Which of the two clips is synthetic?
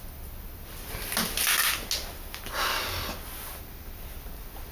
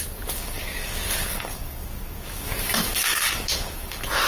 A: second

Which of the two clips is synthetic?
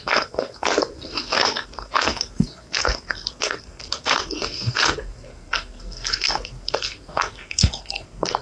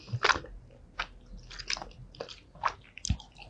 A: first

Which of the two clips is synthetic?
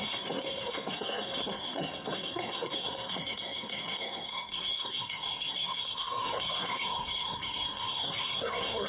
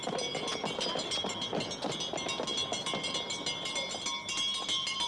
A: first